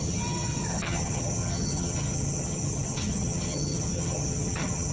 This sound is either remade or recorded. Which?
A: remade